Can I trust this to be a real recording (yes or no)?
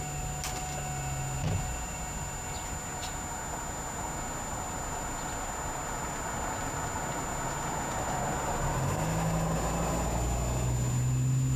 yes